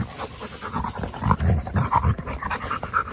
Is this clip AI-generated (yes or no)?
no